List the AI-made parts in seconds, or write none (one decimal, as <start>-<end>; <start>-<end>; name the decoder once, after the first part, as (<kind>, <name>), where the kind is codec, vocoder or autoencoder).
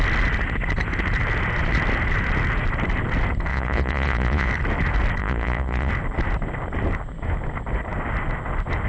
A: 3.5-4.5 (vocoder, Vocos); 5.2-5.9